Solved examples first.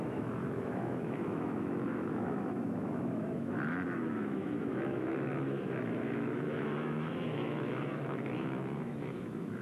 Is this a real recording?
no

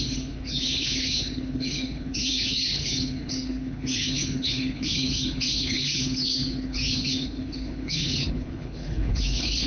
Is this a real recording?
no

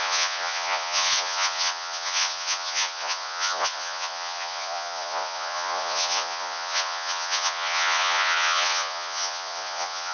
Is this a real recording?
no